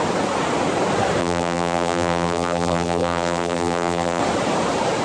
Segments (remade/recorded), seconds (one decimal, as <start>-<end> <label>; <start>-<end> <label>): 0.0-1.2 recorded; 1.2-4.2 remade; 4.2-5.0 recorded